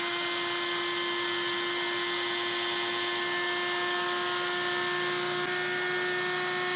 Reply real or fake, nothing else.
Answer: real